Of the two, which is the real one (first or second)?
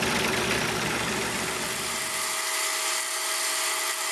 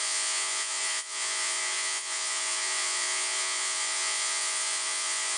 first